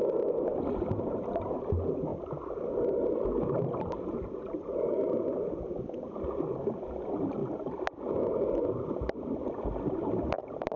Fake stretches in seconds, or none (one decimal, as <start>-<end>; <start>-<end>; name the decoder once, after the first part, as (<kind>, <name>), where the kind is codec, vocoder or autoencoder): none